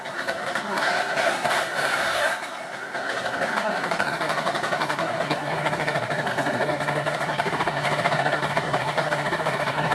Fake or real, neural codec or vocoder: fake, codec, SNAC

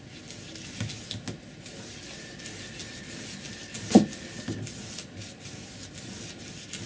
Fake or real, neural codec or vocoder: real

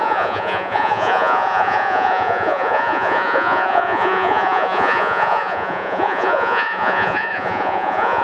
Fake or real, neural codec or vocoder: fake, vocoder, Vocos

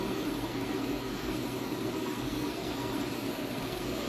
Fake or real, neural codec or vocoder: fake, codec, SNAC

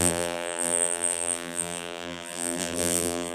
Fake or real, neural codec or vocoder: fake, vocoder, BigVGAN v2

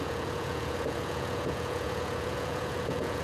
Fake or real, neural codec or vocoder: fake, vocoder, Vocos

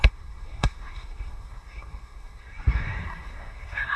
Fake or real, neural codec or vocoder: fake, codec, SNAC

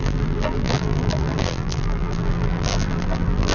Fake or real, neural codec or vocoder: fake, vocoder, BigVGAN v2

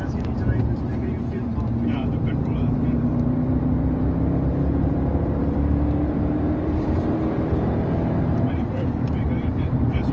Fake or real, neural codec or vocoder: fake, vocoder, BigVGAN v2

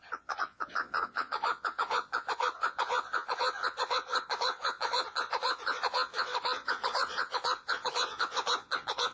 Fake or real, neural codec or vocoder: fake, vocoder, Vocos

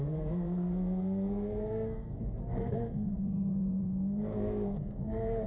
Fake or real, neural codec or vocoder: fake, codec, SNAC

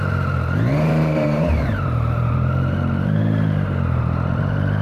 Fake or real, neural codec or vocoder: fake, vocoder, BigVGAN v2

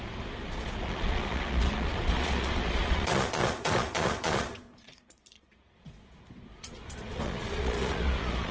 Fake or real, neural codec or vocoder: fake, vocoder, Vocos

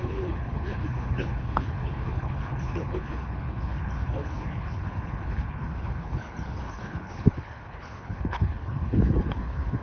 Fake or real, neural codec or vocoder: fake, codec, HILCodec